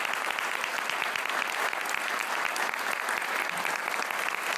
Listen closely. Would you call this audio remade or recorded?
recorded